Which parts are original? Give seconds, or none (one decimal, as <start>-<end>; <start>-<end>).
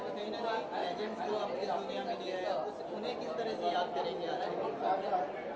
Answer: 0.0-0.8; 1.3-5.6